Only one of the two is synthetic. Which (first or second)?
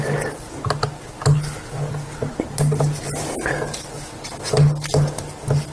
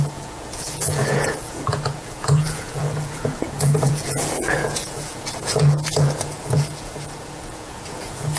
second